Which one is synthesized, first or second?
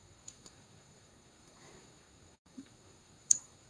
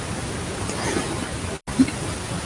first